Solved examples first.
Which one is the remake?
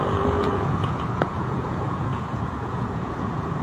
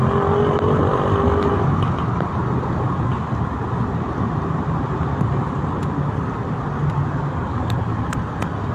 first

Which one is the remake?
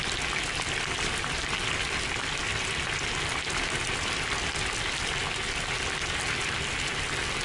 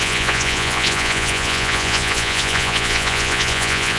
second